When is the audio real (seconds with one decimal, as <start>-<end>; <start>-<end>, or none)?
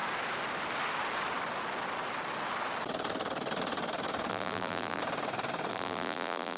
0.0-4.3; 5.0-5.7